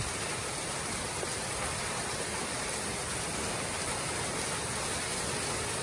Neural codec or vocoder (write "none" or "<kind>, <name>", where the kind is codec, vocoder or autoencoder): none